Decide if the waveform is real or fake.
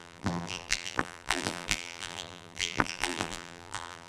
fake